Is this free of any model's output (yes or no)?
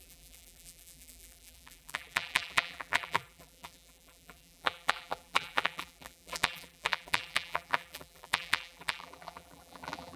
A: no